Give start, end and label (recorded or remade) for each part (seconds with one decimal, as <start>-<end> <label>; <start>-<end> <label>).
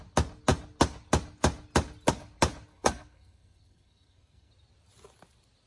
0.0-2.7 recorded; 2.7-4.5 remade; 4.5-5.7 recorded